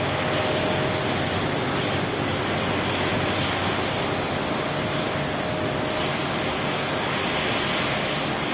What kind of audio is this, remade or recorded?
recorded